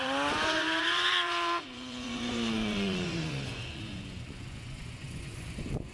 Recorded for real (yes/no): no